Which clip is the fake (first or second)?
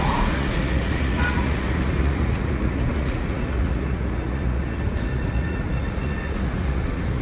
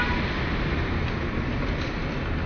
first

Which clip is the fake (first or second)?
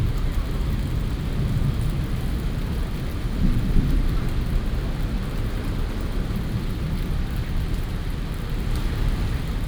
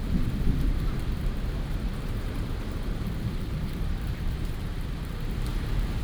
second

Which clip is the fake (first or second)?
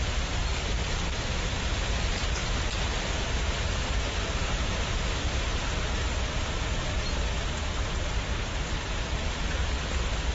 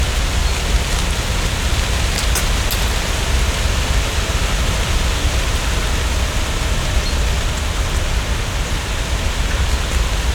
first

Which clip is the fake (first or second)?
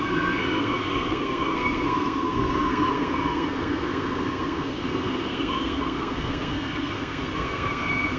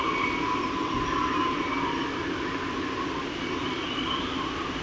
first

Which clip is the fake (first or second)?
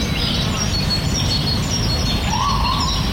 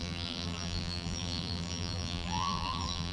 second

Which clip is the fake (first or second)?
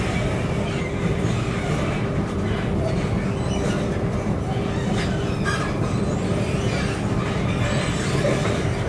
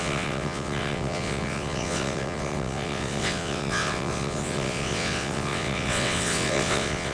second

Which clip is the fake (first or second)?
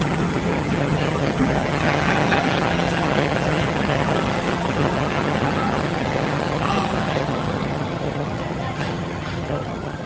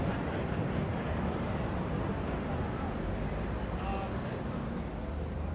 first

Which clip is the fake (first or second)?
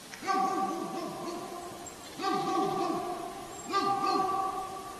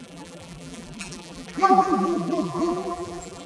second